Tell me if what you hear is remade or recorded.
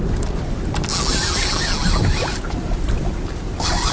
recorded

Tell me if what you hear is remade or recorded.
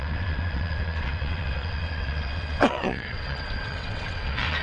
remade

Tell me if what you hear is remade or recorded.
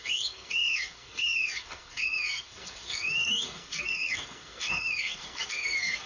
remade